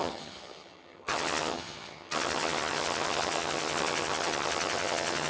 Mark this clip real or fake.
fake